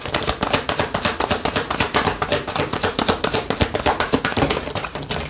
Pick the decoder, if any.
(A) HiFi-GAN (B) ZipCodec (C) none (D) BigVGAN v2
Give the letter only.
D